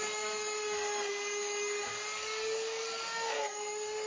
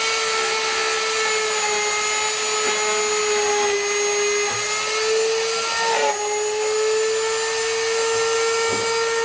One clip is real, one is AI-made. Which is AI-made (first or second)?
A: first